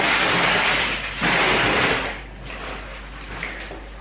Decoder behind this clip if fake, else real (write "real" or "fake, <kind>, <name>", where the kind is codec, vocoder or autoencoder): fake, vocoder, BigVGAN v2